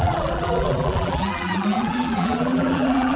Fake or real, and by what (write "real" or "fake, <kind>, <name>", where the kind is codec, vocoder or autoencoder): fake, vocoder, BigVGAN v2